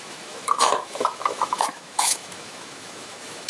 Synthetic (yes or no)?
yes